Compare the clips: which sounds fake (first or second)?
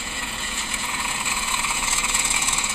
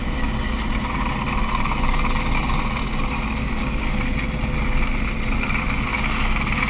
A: first